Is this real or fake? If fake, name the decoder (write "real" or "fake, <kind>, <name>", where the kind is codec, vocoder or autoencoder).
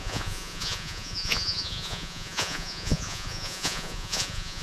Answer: fake, vocoder, Vocos